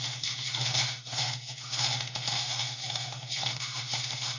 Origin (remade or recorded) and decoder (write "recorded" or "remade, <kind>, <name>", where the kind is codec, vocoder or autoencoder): remade, autoencoder, DAC-VAE